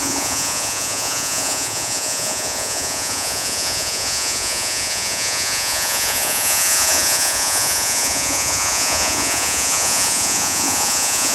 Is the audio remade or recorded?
remade